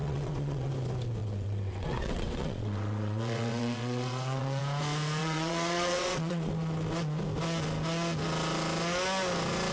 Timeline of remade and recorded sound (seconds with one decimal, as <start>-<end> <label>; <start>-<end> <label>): 0.0-0.7 remade; 0.7-1.2 recorded; 1.2-4.6 remade; 4.6-5.2 recorded; 5.2-6.5 remade; 6.5-9.7 recorded